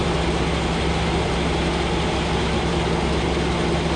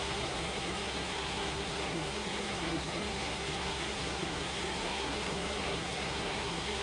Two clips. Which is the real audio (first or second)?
first